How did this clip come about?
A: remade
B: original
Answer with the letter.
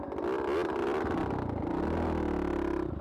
B